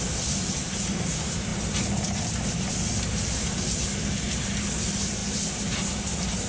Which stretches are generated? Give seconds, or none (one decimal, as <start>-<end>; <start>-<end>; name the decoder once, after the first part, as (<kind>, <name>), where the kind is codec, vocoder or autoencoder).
none